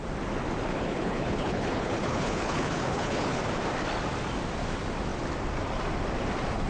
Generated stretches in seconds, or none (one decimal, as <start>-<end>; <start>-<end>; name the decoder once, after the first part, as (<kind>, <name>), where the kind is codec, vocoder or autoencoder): 0.7-3.4 (codec, HILCodec)